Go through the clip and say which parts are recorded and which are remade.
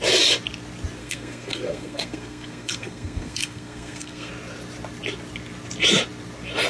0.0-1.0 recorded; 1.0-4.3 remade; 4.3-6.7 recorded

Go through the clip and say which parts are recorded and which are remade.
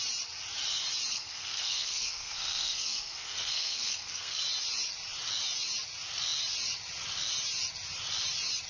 0.0-1.1 recorded; 1.1-4.4 remade; 4.4-8.7 recorded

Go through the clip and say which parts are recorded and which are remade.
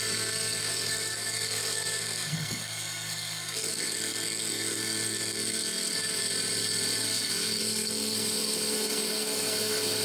0.0-6.3 remade; 6.3-7.0 recorded; 7.0-10.0 remade